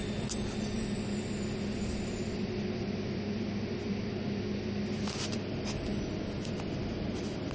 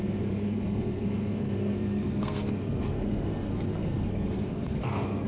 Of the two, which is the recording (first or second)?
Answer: first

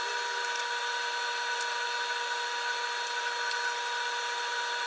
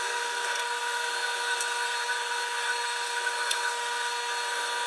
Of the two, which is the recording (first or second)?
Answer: first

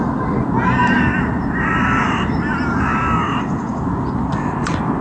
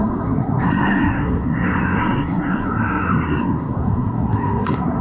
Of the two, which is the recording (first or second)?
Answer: first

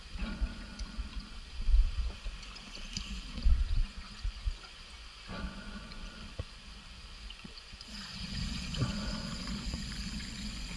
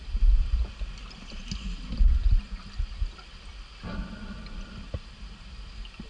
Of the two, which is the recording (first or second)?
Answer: second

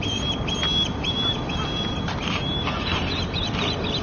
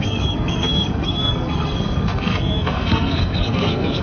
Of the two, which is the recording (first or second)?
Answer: first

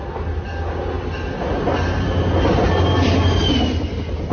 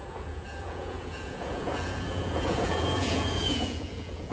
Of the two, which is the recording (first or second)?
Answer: first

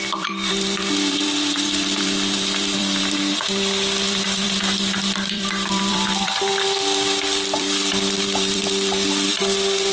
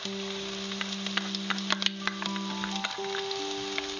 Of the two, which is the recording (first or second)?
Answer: second